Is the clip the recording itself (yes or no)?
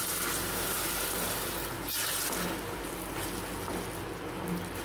yes